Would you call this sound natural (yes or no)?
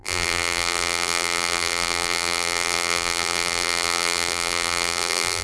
no